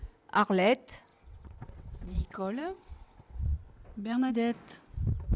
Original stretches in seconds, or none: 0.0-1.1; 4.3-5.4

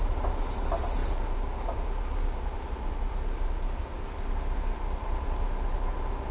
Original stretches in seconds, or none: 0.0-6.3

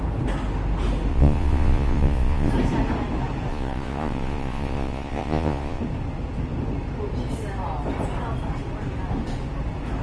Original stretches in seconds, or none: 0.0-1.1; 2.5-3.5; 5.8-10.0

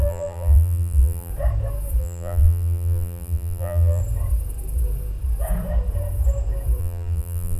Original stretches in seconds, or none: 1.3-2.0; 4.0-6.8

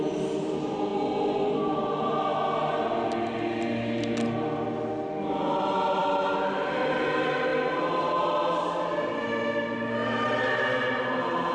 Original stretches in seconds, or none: 0.0-11.5

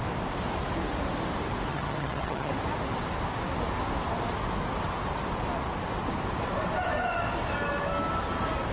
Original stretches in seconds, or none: 0.0-1.7; 2.5-8.7

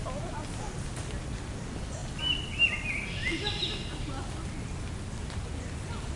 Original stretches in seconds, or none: 0.0-6.2

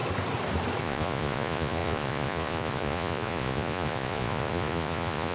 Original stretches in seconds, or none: 0.0-0.8